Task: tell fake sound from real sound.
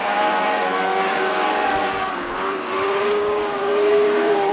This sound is fake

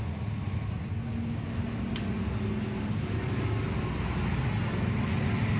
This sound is real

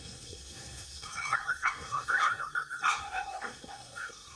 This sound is fake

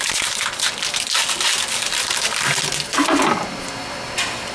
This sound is real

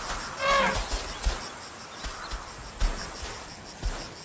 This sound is real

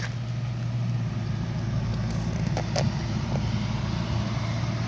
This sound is real